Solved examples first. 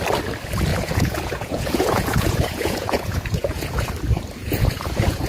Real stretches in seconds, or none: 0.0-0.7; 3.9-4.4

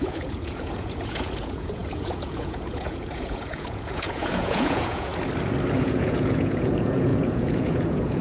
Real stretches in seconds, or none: 5.1-5.8

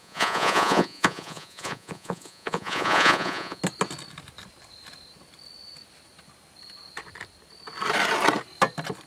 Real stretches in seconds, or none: 3.6-9.1